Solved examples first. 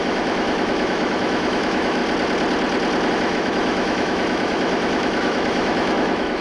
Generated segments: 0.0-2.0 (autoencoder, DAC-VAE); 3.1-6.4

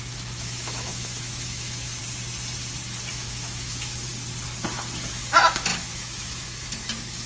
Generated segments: 0.0-2.0 (autoencoder, DAC-VAE); 3.1-4.1; 5.1-7.3

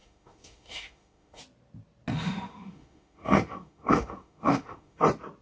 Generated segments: 0.0-1.4 (autoencoder, DAC-VAE); 2.1-5.0

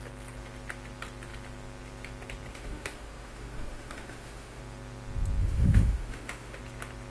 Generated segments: 2.5-4.6 (autoencoder, DAC-VAE); 5.4-6.6